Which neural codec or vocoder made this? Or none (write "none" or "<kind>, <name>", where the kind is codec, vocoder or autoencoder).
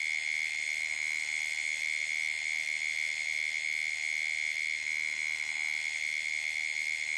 none